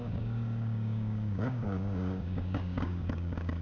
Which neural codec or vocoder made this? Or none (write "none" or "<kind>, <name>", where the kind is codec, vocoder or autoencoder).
codec, DAC